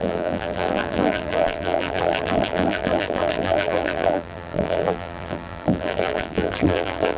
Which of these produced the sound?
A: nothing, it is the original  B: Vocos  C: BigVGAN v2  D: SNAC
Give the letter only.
C